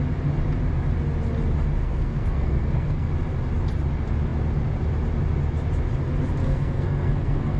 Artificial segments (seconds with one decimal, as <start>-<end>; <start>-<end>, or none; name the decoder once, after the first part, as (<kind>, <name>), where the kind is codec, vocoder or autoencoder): 1.8-3.1 (codec, SNAC); 6.4-7.6